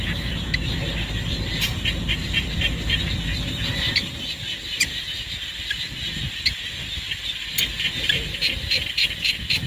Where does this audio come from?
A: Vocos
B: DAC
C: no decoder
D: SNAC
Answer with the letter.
C